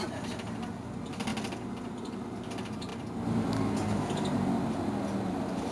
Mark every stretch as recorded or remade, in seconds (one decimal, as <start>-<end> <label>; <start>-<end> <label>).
0.0-5.7 recorded